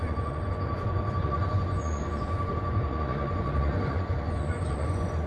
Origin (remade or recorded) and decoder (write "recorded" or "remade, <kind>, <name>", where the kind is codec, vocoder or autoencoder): remade, vocoder, Vocos